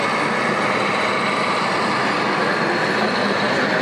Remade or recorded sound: recorded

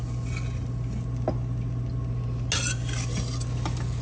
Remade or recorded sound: recorded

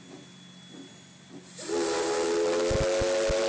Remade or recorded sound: recorded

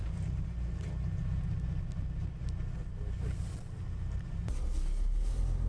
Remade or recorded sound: recorded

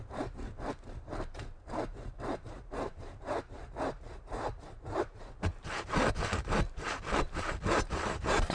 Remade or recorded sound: remade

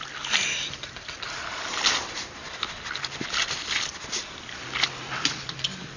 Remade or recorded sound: recorded